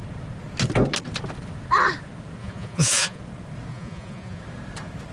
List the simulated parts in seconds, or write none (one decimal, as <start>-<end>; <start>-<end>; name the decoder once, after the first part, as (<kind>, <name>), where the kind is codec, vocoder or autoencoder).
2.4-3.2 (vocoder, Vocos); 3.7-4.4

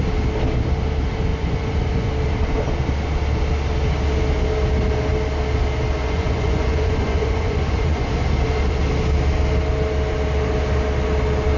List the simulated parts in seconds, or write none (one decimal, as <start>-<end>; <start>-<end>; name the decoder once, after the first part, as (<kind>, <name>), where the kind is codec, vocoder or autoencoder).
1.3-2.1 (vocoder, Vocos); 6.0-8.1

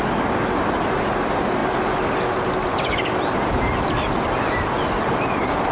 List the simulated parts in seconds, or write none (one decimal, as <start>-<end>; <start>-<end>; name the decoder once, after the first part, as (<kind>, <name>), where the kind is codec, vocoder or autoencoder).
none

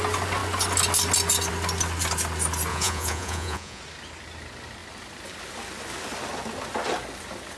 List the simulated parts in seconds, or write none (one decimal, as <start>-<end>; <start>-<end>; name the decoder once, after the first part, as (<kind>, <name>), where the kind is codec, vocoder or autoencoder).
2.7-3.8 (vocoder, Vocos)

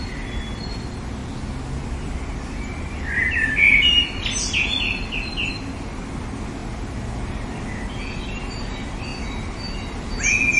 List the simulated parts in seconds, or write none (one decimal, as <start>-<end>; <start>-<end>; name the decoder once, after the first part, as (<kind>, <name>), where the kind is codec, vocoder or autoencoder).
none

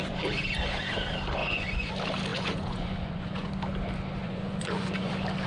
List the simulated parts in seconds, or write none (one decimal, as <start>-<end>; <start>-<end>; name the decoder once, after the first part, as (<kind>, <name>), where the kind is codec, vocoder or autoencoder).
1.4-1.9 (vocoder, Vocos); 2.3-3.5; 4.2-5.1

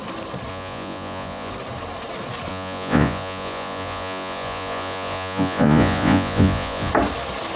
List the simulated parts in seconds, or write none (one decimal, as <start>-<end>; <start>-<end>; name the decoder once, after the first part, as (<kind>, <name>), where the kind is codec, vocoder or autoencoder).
0.5-1.5 (vocoder, Vocos); 2.5-6.9